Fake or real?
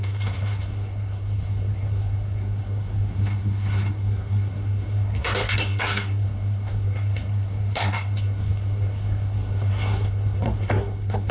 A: fake